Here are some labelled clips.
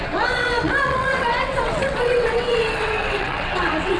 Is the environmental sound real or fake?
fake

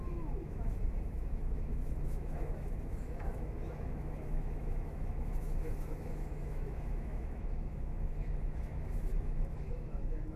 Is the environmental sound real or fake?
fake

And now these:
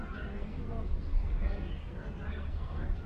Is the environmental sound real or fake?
fake